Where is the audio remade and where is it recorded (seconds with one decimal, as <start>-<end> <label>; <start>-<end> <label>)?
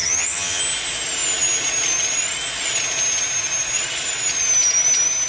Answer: 0.0-0.6 remade; 0.6-5.3 recorded